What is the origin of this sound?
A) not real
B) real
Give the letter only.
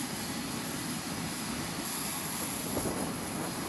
B